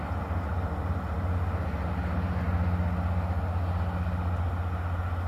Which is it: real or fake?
real